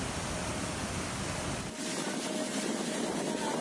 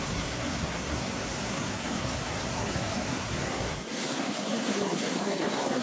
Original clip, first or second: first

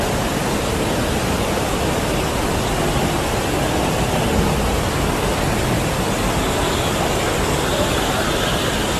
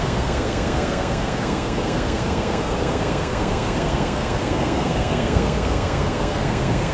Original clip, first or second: first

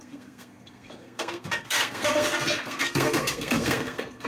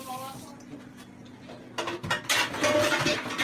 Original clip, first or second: second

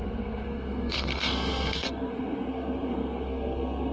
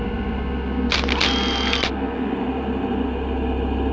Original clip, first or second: second